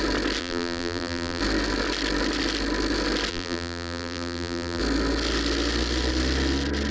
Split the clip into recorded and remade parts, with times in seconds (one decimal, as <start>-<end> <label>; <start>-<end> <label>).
0.0-0.4 recorded; 0.4-1.4 remade; 1.4-3.3 recorded; 3.3-4.8 remade; 4.8-6.9 recorded